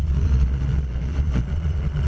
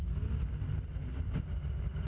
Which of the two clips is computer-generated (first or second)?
first